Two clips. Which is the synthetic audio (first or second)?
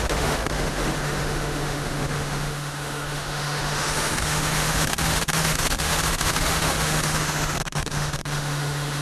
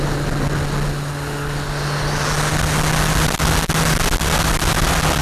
first